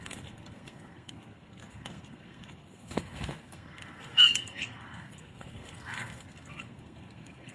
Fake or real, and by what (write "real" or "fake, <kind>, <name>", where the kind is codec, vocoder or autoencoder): fake, codec, SNAC